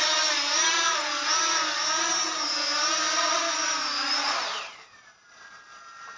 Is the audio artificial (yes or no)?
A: yes